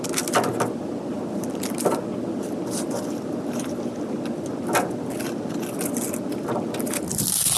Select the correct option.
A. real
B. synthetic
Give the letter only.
A